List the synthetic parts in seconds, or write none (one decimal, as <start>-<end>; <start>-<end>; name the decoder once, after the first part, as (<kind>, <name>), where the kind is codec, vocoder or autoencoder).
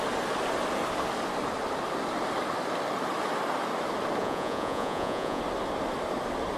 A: 4.2-5.4 (vocoder, Vocos)